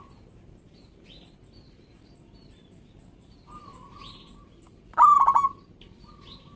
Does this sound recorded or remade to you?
recorded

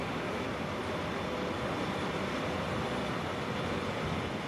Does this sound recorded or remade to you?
recorded